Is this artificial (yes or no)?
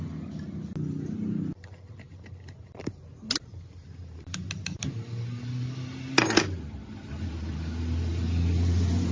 no